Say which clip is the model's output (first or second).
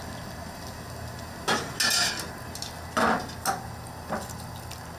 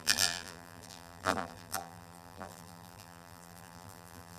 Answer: second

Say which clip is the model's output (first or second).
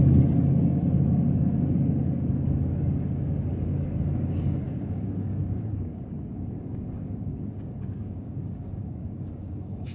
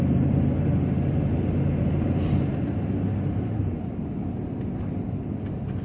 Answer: first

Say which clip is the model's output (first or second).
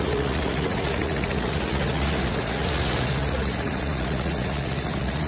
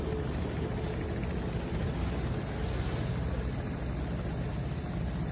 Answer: first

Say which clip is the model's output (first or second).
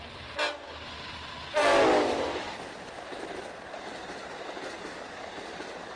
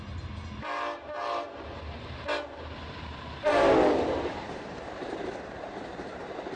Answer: second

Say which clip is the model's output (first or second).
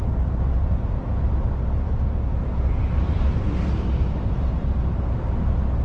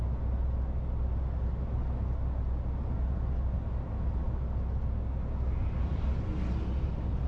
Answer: first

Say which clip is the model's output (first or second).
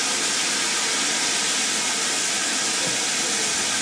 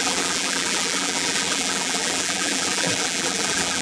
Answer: second